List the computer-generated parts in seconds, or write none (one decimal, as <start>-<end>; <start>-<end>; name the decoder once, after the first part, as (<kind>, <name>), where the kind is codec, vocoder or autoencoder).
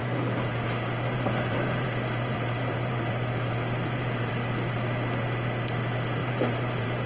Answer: 0.0-4.3 (vocoder, BigVGAN v2); 6.2-7.1